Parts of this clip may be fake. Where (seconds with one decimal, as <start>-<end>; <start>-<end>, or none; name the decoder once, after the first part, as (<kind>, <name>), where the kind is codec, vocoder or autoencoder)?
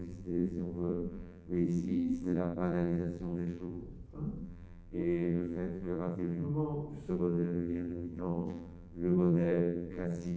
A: 0.0-3.8 (vocoder, BigVGAN v2); 4.4-6.5; 7.1-10.4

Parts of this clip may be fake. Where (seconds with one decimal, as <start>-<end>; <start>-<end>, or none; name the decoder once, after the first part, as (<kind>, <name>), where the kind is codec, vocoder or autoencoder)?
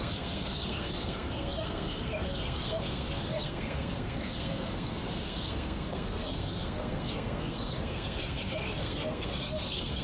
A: 0.0-10.0 (codec, SNAC)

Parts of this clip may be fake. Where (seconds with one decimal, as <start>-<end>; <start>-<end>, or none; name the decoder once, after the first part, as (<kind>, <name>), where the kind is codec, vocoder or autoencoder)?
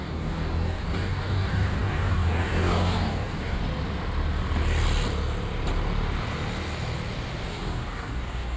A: 0.0-3.6 (codec, DAC); 7.5-8.6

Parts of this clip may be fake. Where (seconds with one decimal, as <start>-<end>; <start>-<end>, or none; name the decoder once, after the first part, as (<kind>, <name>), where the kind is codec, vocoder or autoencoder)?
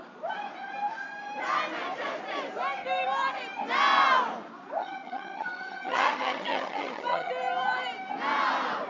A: 4.8-7.3 (vocoder, HiFi-GAN)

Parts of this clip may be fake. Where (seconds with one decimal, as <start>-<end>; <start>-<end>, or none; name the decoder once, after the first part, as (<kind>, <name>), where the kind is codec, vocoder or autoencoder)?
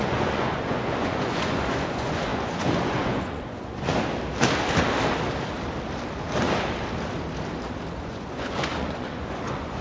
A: 0.0-3.9 (vocoder, Vocos); 8.0-9.8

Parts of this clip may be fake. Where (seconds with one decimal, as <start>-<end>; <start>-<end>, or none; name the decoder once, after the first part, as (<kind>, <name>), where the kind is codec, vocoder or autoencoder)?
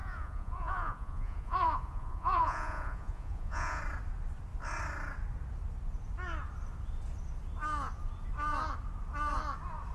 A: 0.0-3.8 (vocoder, Vocos)